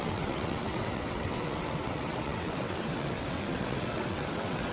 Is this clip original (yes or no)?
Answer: no